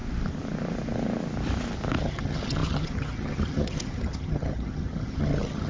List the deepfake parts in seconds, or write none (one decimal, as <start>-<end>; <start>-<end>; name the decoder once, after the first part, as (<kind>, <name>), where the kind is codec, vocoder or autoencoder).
2.0-5.7 (vocoder, HiFi-GAN)